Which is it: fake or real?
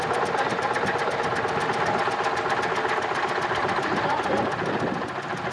real